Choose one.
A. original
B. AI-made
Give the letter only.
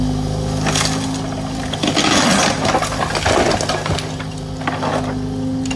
A